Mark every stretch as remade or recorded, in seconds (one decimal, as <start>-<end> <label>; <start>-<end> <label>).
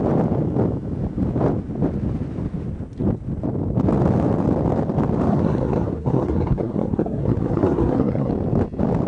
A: 0.0-5.3 recorded; 5.3-8.3 remade; 8.3-9.1 recorded